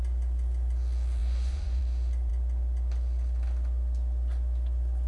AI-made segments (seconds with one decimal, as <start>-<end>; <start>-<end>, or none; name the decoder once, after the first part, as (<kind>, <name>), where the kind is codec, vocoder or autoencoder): 1.2-1.8 (vocoder, Vocos)

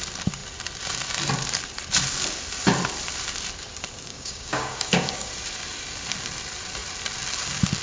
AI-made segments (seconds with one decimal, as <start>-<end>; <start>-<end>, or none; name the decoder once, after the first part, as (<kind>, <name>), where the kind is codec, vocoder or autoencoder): 4.1-5.3 (codec, DAC)

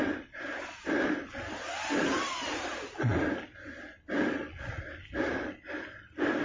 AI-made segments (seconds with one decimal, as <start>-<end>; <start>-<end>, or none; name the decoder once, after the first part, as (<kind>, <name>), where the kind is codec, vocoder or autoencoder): none

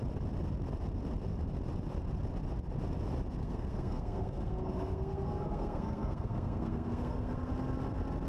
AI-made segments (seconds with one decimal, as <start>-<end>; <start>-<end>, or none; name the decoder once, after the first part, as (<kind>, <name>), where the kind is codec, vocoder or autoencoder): 3.4-7.5 (codec, SNAC)

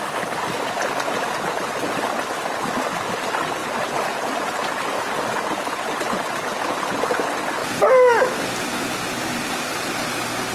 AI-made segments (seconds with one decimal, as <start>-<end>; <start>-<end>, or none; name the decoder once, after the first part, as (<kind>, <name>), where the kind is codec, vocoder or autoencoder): none

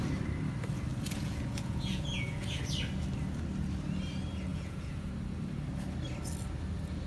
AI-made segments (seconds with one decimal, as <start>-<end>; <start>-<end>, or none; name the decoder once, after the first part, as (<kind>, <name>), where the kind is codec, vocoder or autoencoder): 0.9-2.6 (vocoder, Vocos); 4.5-5.1

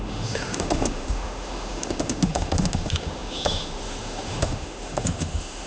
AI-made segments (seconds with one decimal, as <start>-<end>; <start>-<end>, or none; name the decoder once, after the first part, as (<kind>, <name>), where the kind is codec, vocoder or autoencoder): 0.0-5.7 (autoencoder, DAC-VAE)